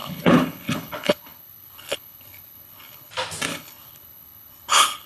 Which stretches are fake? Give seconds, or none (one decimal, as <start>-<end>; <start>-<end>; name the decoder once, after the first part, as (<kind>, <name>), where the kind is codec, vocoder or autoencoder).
0.0-3.1 (codec, HILCodec); 3.5-5.1